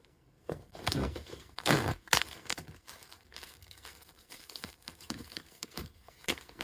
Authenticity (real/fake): fake